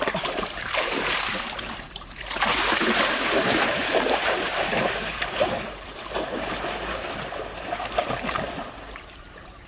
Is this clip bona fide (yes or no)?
no